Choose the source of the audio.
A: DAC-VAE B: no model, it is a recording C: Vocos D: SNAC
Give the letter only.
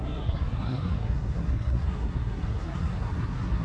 D